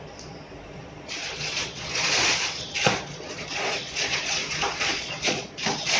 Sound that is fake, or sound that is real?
fake